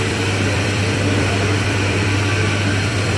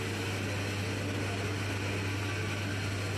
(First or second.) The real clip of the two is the second